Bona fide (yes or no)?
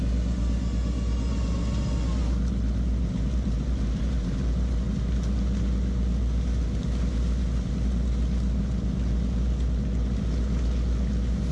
yes